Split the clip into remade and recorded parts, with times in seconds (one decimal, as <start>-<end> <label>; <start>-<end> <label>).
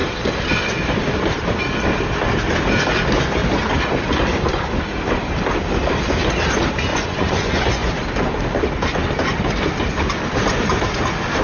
0.0-6.9 recorded; 6.9-7.9 remade; 7.9-11.4 recorded